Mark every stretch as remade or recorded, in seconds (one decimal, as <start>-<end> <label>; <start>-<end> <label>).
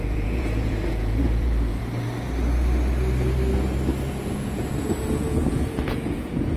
0.0-1.8 remade; 1.8-4.1 recorded; 4.1-6.6 remade